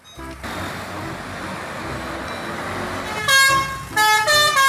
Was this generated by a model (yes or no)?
no